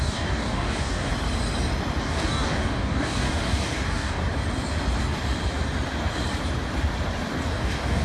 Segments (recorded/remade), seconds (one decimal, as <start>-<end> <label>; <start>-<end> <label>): 0.0-1.1 remade; 1.1-2.0 recorded; 2.0-4.2 remade; 4.2-7.5 recorded; 7.5-8.0 remade